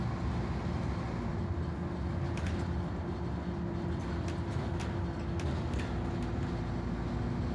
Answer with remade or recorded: recorded